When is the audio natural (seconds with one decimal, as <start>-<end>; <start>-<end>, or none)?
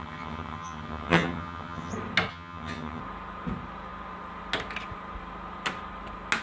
1.9-2.3; 3.0-6.4